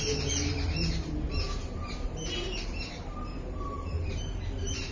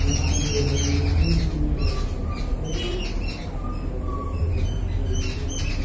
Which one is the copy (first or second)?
first